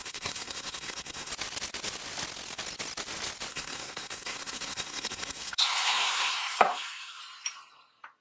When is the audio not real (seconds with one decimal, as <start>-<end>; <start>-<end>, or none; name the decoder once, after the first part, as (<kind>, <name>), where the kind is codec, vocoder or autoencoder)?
0.0-1.3 (codec, SNAC); 3.5-7.2